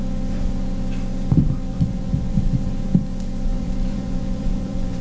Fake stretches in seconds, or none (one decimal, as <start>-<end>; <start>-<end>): 1.7-2.4; 3.5-5.0